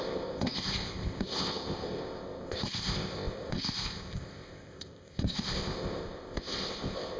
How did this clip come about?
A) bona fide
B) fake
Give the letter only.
B